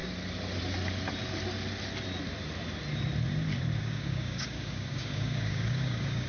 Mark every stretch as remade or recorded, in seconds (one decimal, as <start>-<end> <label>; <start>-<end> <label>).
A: 0.0-3.8 recorded; 3.8-6.3 remade